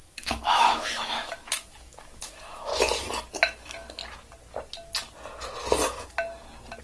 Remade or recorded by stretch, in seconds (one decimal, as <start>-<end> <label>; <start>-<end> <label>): 0.0-2.7 remade; 2.7-3.3 recorded; 3.3-4.0 remade; 4.0-6.8 recorded